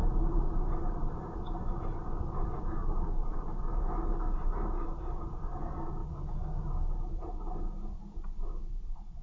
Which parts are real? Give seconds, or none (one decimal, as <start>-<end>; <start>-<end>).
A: 6.0-6.9